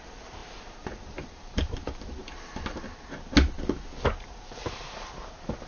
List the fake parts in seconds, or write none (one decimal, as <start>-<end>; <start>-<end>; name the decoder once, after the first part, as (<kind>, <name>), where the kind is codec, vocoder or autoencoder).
0.4-1.9 (vocoder, BigVGAN v2)